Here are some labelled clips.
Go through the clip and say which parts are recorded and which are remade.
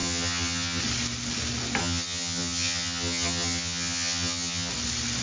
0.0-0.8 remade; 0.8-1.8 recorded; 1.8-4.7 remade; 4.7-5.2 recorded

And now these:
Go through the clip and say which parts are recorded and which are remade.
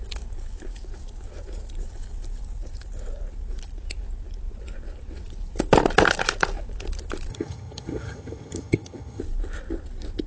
0.0-7.3 recorded; 7.3-9.2 remade; 9.2-10.3 recorded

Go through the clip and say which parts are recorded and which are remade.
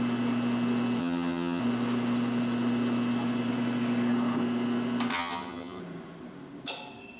0.0-1.0 recorded; 1.0-1.6 remade; 1.6-5.1 recorded; 5.1-5.8 remade; 5.8-7.2 recorded